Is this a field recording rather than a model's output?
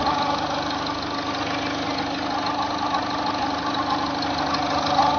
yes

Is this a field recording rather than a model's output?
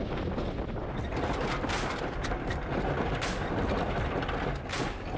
yes